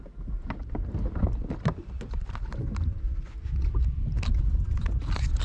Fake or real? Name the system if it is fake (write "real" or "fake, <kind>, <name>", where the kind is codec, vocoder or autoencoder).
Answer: real